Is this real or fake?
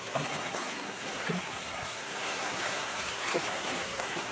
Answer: fake